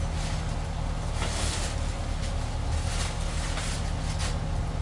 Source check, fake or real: real